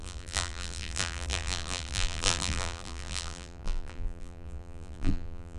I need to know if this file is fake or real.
fake